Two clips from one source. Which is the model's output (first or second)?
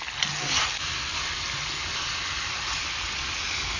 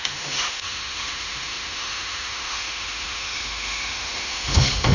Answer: second